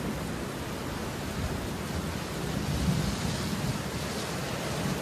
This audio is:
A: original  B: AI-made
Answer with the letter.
A